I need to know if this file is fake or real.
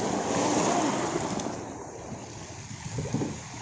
real